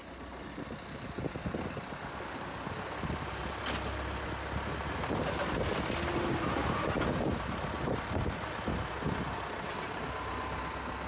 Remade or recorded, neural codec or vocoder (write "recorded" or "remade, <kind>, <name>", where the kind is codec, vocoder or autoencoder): recorded